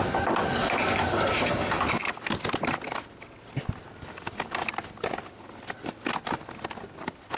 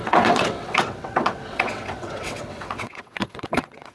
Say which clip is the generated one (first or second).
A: second